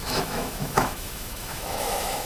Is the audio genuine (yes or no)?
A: no